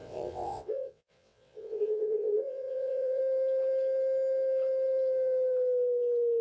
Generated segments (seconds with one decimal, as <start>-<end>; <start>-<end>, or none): 0.0-3.2